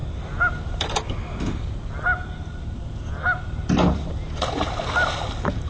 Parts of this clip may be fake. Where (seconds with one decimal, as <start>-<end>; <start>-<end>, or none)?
none